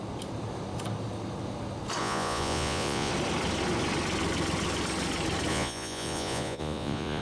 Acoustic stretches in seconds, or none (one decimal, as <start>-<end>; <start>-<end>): 0.0-2.0; 3.1-5.5